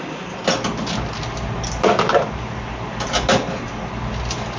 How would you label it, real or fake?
real